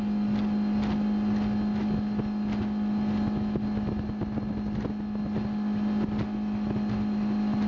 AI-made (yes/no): no